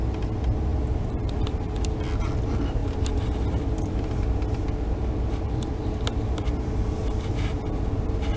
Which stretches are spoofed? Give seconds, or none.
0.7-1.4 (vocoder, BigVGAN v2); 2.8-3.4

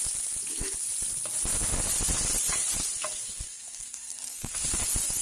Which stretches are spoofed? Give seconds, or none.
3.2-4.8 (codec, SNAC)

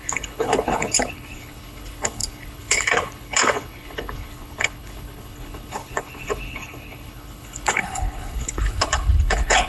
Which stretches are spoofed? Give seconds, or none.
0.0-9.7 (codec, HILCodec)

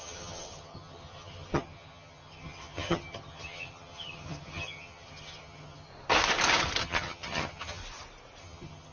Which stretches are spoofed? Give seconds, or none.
0.0-5.9 (vocoder, HiFi-GAN); 6.8-7.8; 8.4-8.9

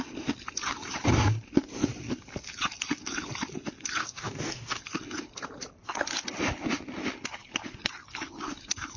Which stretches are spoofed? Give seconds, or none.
4.0-4.8 (codec, DAC)

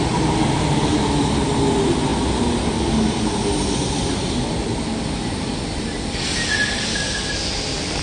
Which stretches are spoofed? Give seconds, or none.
none

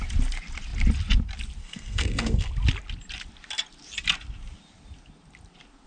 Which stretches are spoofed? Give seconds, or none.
1.6-2.5 (codec, SNAC)